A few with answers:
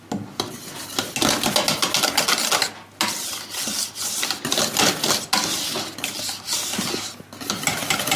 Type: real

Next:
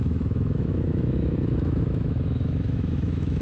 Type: fake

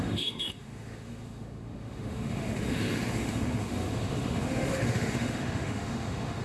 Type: fake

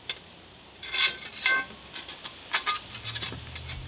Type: real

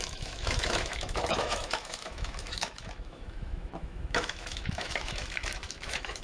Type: fake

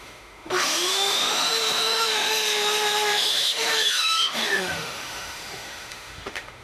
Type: fake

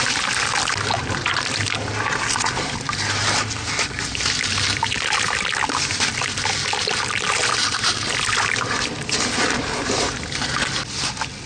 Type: real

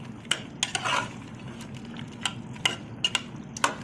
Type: real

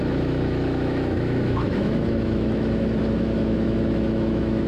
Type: fake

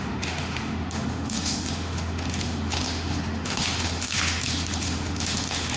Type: fake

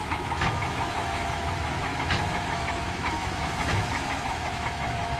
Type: fake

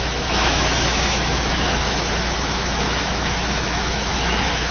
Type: fake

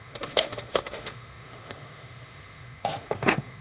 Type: fake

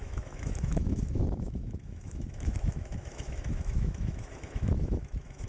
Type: fake